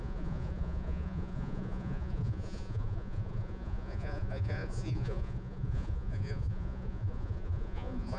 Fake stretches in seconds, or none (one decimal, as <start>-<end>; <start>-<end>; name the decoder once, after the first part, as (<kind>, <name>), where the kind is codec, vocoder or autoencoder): 0.0-8.2 (vocoder, Vocos)